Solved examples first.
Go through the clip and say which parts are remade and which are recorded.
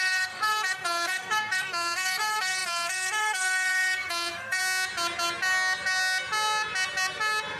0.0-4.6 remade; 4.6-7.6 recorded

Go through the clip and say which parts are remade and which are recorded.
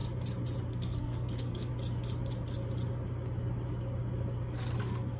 0.0-0.7 recorded; 0.7-1.7 remade; 1.7-4.8 recorded; 4.8-5.2 remade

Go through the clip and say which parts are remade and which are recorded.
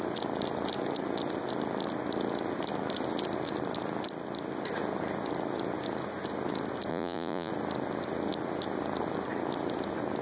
0.0-6.9 recorded; 6.9-7.5 remade; 7.5-10.2 recorded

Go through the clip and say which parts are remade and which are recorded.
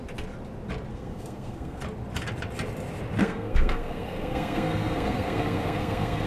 0.0-0.9 recorded; 0.9-1.8 remade; 1.8-3.2 recorded; 3.2-6.3 remade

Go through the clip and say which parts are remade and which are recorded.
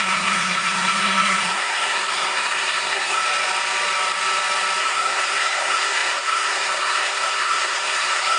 0.0-3.2 remade; 3.2-4.8 recorded; 4.8-8.4 remade